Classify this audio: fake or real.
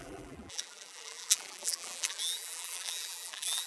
fake